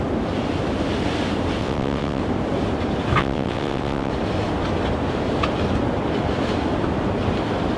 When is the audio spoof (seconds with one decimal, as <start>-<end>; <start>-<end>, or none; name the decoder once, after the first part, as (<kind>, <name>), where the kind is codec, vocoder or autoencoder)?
1.6-2.2 (vocoder, WaveNeXt); 3.2-4.1